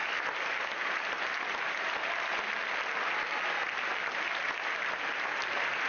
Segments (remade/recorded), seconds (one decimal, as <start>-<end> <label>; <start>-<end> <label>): 0.0-5.9 recorded